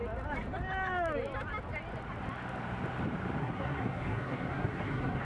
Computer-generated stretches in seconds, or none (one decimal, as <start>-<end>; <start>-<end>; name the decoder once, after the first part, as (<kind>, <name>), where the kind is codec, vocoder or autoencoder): 3.4-5.2 (codec, SNAC)